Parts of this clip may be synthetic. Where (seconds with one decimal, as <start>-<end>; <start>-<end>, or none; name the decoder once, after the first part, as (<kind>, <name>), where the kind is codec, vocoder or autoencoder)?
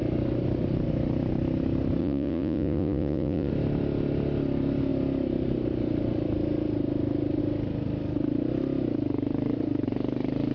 2.0-3.5 (vocoder, Vocos)